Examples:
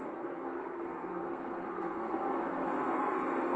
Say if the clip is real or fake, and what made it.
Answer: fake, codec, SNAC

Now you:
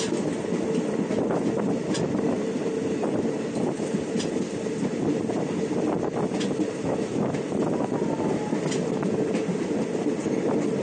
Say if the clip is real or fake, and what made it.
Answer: real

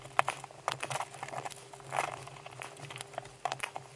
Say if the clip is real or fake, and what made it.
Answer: real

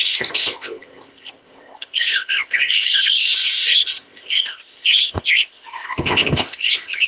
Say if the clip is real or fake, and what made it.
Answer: fake, codec, ZipCodec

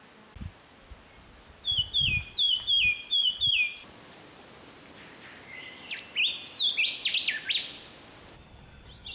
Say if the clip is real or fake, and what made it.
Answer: real